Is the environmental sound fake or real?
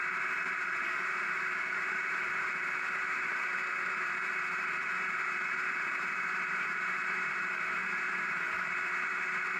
fake